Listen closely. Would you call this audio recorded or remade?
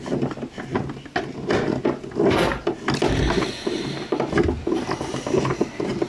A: recorded